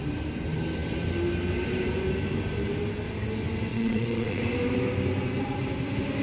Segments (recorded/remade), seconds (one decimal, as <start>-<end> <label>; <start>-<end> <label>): 0.0-3.7 recorded; 3.7-4.4 remade; 4.4-6.2 recorded

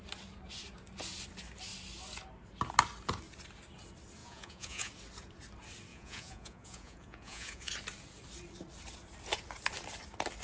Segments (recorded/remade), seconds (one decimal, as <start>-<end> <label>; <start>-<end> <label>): 0.0-4.2 recorded; 4.2-4.9 remade; 4.9-5.9 recorded; 5.9-7.7 remade; 7.7-10.4 recorded

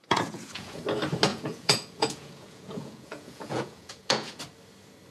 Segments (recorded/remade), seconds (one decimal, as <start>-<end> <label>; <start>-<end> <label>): 0.0-0.8 remade; 0.8-1.3 recorded; 1.3-4.4 remade; 4.4-5.1 recorded

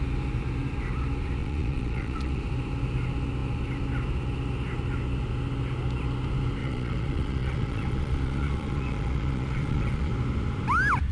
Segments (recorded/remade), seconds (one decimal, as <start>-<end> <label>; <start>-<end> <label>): 0.0-1.4 recorded; 1.4-2.4 remade; 2.4-6.6 recorded; 6.6-10.1 remade; 10.1-11.1 recorded

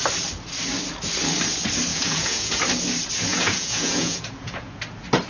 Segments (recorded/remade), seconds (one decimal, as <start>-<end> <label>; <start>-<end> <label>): 0.0-1.9 recorded; 1.9-2.6 remade; 2.6-3.3 recorded; 3.3-4.7 remade; 4.7-5.3 recorded

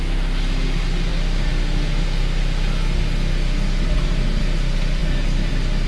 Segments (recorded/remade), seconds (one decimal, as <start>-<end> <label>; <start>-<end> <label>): 0.0-5.9 recorded

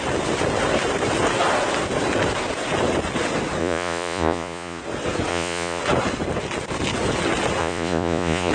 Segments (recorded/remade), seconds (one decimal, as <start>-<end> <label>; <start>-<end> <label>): 0.0-3.6 recorded; 3.6-4.8 remade; 4.8-5.3 recorded; 5.3-5.8 remade; 5.8-7.6 recorded; 7.6-8.5 remade

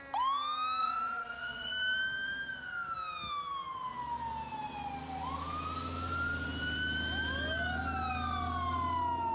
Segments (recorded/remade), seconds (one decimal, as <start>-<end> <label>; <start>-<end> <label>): 0.0-0.8 recorded; 0.8-1.7 remade; 1.7-9.3 recorded